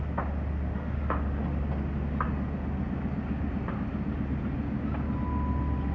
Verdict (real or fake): real